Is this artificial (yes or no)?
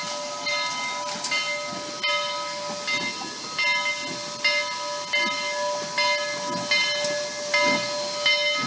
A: no